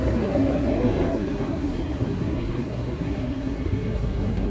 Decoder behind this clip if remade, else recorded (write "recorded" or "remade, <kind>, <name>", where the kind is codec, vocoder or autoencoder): remade, codec, SNAC